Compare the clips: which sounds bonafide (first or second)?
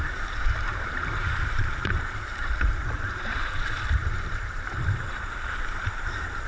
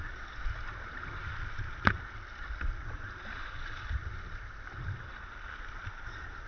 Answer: second